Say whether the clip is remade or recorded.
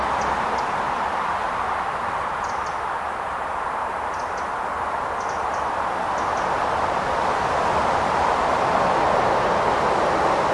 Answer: recorded